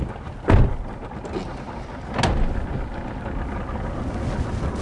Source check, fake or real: real